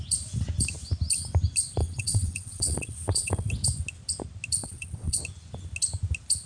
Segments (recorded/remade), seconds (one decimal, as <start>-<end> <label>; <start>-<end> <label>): 0.0-1.8 recorded; 1.8-3.5 remade; 3.5-4.6 recorded; 4.6-5.2 remade; 5.2-6.5 recorded

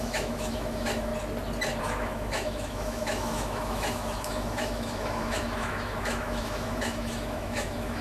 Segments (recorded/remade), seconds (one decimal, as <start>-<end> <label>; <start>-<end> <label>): 0.0-1.1 remade; 1.1-1.8 recorded; 1.8-8.0 remade

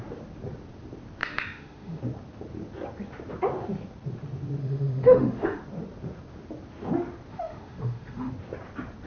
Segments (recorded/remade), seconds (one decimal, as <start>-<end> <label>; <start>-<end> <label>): 0.0-1.2 recorded; 1.2-2.0 remade; 2.0-4.6 recorded; 4.6-5.6 remade; 5.6-7.3 recorded; 7.3-8.3 remade; 8.3-9.1 recorded

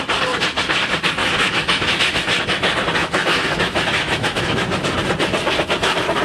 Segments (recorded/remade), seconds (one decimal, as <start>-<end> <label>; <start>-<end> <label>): 0.0-1.2 recorded; 1.2-2.0 remade; 2.0-3.0 recorded; 3.0-4.6 remade; 4.6-6.2 recorded

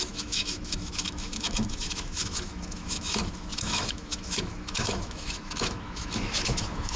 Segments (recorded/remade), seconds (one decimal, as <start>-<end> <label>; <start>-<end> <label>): 0.0-7.0 remade

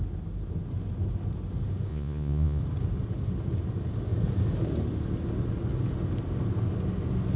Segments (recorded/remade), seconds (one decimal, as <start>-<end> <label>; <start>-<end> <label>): 0.0-1.9 recorded; 1.9-2.6 remade; 2.6-7.4 recorded

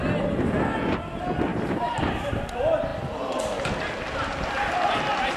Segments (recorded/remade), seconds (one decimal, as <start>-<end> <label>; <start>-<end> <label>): 0.0-1.5 recorded; 1.5-2.4 remade; 2.4-5.4 recorded